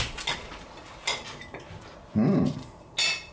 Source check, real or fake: real